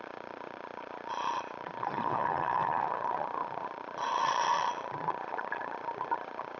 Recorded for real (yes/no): no